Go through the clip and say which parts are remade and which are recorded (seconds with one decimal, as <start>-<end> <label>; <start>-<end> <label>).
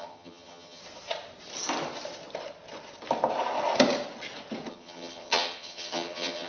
0.0-0.8 remade; 0.8-4.7 recorded; 4.7-6.5 remade